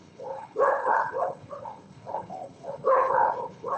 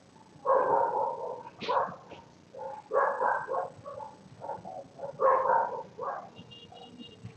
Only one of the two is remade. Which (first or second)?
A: first